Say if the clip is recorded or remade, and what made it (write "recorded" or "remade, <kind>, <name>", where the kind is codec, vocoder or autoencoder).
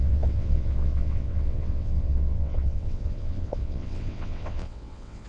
remade, vocoder, WaveNeXt